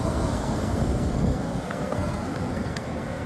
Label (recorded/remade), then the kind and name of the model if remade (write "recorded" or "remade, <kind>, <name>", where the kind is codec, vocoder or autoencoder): remade, codec, SNAC